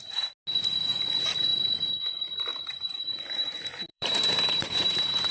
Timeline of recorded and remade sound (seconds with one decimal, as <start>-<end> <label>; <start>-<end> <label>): 0.0-3.9 recorded; 3.9-5.3 remade